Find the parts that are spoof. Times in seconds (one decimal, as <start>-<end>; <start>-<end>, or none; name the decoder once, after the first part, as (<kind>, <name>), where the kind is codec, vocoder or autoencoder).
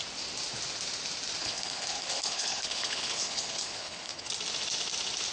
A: 1.4-4.3 (codec, HILCodec)